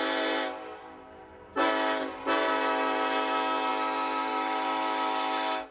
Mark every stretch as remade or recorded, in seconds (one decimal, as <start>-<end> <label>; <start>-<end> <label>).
0.0-4.3 recorded; 4.3-5.7 remade